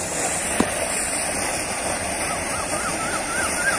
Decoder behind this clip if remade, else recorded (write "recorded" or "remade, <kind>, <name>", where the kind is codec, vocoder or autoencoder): recorded